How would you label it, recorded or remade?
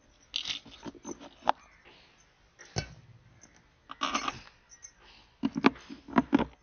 recorded